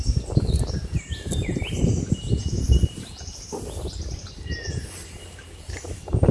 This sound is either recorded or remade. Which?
remade